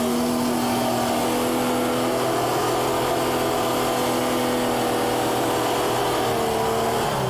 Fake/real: real